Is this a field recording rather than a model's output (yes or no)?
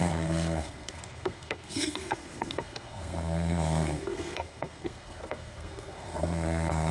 no